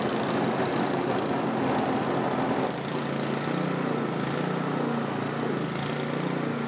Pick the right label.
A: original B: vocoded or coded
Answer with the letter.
A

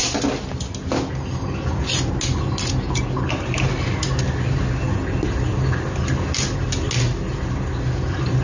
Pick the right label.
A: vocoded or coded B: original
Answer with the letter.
B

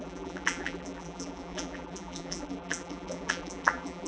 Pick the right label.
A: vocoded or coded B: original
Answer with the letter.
A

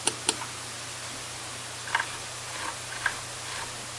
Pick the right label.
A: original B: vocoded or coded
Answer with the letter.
A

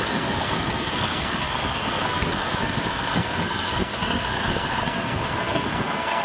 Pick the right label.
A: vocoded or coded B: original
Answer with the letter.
A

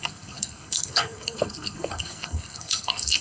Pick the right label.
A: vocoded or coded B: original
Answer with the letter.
A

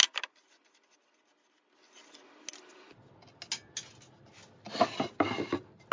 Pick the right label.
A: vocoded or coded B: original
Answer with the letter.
B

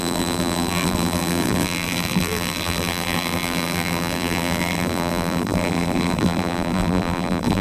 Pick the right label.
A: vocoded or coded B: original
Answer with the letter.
A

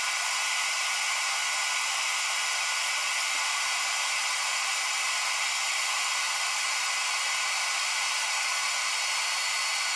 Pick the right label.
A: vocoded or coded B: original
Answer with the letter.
B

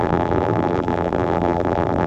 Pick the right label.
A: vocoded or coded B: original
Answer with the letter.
A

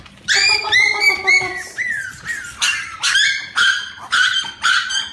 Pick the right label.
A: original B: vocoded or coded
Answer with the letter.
B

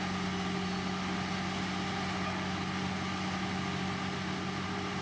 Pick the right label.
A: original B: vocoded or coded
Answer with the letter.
A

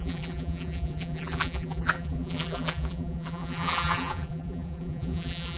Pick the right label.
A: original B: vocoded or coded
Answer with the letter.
B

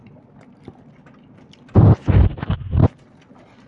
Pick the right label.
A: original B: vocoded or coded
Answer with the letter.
A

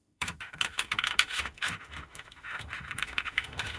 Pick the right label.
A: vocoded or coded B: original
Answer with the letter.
A